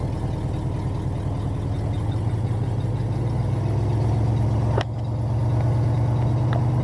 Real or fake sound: real